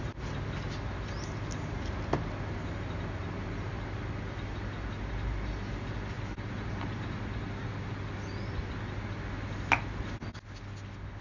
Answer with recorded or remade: recorded